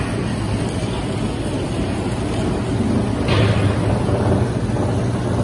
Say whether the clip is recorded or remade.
recorded